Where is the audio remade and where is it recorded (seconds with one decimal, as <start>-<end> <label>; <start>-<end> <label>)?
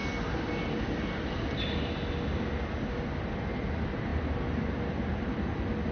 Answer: 0.0-5.9 recorded